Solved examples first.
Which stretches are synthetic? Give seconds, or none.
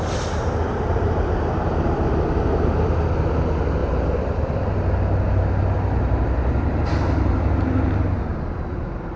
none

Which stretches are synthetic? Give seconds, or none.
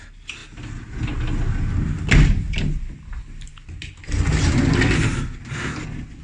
none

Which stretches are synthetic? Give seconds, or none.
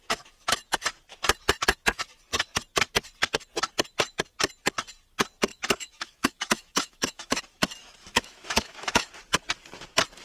5.5-7.4; 8.0-9.1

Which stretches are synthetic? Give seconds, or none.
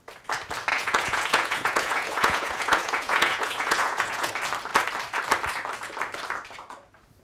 0.7-4.3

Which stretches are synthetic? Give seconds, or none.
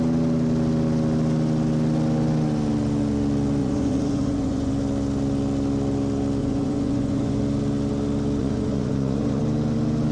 3.6-4.7; 6.4-7.4; 8.4-9.4